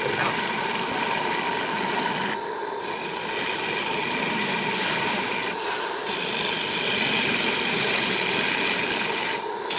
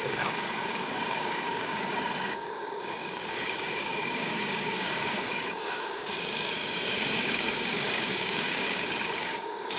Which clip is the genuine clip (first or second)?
first